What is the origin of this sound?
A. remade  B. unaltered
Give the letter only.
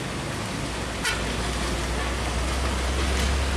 B